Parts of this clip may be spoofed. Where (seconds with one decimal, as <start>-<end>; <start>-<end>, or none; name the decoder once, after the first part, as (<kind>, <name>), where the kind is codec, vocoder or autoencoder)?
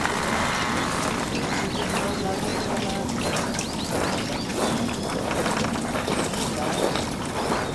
none